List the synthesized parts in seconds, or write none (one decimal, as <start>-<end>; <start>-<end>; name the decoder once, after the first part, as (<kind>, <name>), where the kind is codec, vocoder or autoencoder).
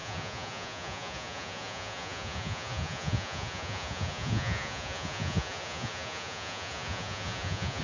0.0-7.8 (vocoder, Vocos)